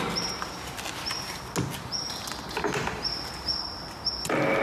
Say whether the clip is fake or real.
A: real